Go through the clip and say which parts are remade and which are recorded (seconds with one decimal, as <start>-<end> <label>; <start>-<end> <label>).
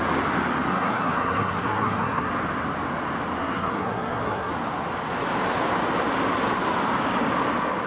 0.0-0.7 recorded; 0.7-2.3 remade; 2.3-3.4 recorded; 3.4-4.5 remade; 4.5-7.9 recorded